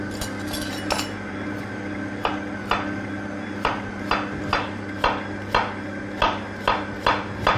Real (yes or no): yes